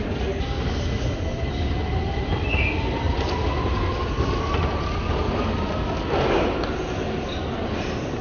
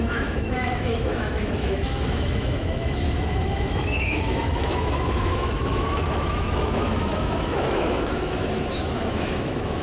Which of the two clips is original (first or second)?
first